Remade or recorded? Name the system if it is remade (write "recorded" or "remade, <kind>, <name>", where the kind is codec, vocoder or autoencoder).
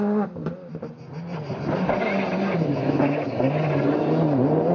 recorded